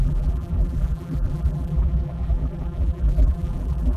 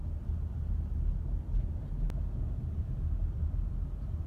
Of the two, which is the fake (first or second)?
first